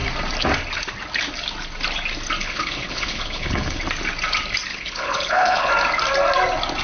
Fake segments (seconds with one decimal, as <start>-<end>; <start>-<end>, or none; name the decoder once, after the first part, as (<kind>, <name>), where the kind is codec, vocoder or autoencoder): 2.4-3.8 (codec, HILCodec); 4.7-5.7